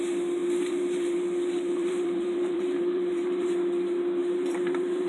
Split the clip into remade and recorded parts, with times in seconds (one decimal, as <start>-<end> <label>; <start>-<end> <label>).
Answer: 0.0-0.4 recorded; 0.4-3.5 remade; 3.5-4.2 recorded; 4.2-5.1 remade